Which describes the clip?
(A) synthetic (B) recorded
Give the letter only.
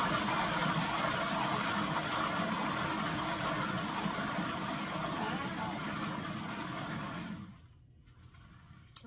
B